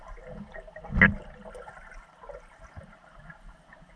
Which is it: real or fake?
real